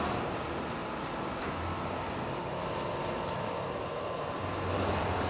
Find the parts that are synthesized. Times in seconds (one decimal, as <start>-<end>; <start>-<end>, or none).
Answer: none